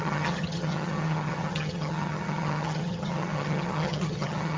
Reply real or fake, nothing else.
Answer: fake